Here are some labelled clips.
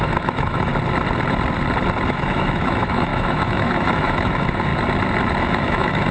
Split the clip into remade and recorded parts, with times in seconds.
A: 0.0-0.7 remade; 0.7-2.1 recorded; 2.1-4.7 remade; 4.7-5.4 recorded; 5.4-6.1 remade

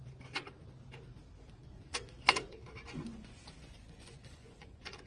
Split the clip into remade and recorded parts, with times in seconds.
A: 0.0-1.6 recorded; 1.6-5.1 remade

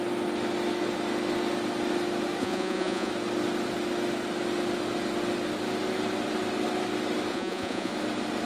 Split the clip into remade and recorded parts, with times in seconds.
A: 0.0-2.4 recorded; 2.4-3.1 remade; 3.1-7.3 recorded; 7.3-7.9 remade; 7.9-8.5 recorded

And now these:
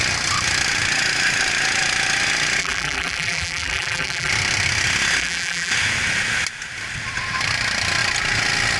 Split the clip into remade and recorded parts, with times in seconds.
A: 0.0-2.6 recorded; 2.6-4.3 remade; 4.3-5.2 recorded; 5.2-5.7 remade; 5.7-8.8 recorded